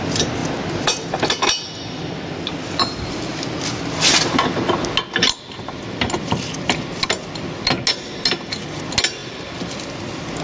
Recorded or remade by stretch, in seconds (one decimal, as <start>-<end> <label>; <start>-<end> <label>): 0.0-10.4 recorded